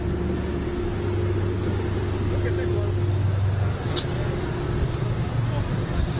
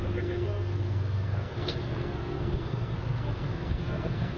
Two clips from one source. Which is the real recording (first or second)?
first